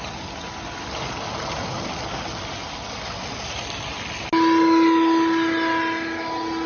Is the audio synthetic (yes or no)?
no